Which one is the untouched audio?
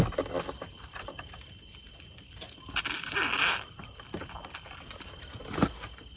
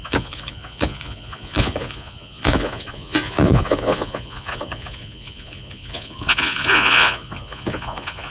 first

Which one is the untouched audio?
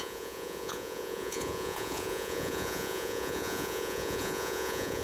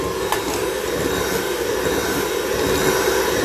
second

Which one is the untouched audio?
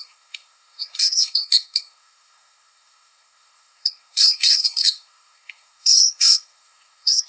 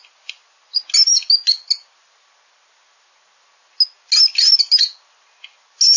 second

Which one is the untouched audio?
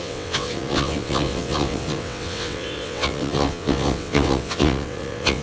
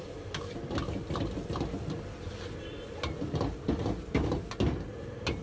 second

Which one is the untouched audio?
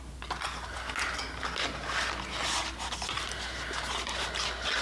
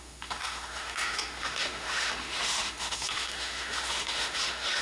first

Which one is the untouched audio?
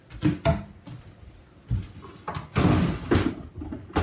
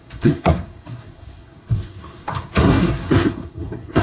first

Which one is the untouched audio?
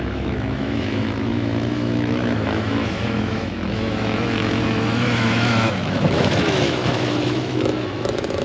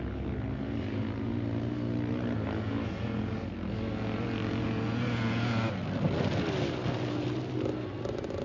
second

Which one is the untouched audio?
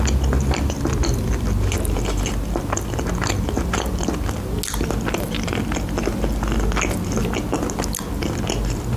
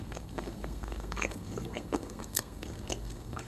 first